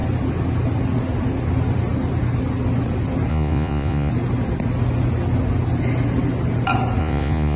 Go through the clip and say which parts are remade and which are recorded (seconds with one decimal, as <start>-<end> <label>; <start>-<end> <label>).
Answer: 0.0-3.3 recorded; 3.3-4.1 remade; 4.1-7.0 recorded; 7.0-7.6 remade